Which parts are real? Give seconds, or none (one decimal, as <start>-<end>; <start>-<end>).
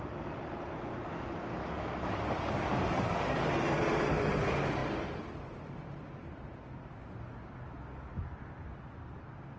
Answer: 0.0-1.6; 3.5-9.6